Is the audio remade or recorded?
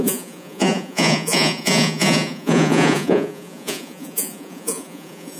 remade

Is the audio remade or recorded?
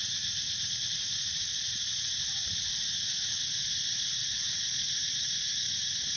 remade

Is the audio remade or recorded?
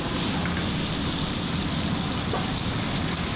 recorded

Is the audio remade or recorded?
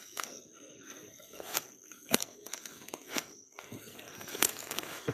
remade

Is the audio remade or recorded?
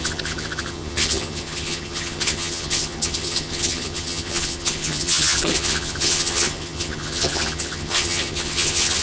remade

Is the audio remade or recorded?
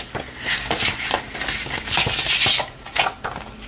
recorded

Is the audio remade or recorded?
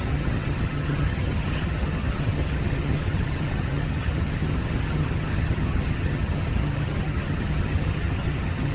remade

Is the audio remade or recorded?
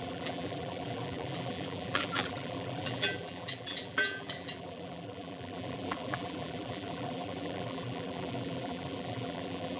remade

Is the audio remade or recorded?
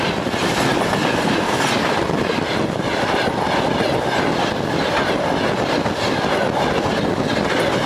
recorded